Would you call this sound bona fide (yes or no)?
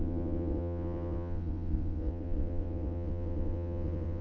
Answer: no